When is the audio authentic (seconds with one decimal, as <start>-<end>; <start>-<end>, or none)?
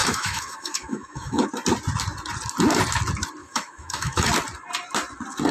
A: 1.5-3.4; 4.3-5.5